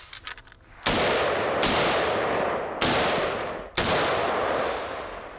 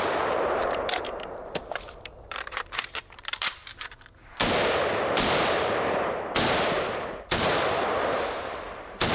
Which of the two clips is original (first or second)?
first